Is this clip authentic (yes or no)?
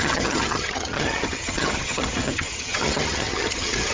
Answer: no